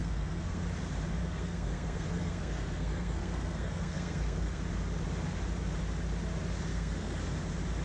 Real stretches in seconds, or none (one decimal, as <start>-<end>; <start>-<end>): 0.6-1.2; 4.6-6.7; 7.2-7.8